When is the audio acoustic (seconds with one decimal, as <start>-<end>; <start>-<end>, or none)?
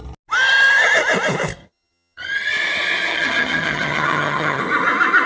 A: 0.0-1.6; 2.5-3.1; 4.6-5.3